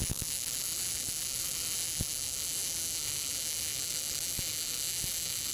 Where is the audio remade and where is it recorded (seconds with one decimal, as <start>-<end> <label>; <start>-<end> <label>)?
0.0-5.5 recorded